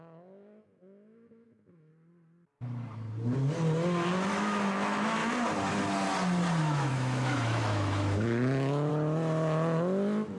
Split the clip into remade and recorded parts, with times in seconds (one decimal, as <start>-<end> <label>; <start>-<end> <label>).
0.0-1.9 remade; 1.9-4.3 recorded; 4.3-5.2 remade; 5.2-6.6 recorded; 6.6-8.9 remade; 8.9-10.4 recorded